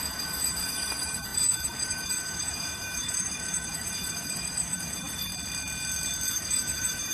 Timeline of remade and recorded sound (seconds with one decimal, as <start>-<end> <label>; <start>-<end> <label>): 0.0-5.3 remade; 5.3-6.3 recorded; 6.3-7.1 remade